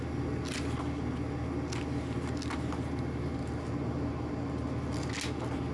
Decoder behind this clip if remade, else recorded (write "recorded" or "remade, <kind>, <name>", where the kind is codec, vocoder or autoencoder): recorded